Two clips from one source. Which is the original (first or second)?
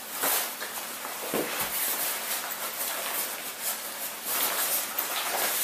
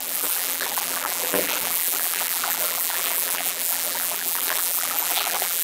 first